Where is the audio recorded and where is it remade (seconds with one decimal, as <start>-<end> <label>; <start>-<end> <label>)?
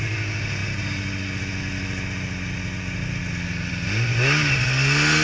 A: 0.0-5.2 recorded